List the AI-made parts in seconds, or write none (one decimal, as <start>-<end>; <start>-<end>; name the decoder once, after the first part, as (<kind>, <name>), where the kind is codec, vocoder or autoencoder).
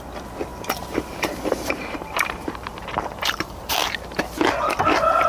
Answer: 0.5-3.7 (vocoder, BigVGAN v2)